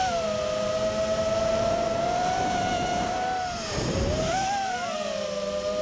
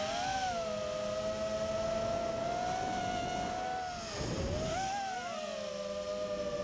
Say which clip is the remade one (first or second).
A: first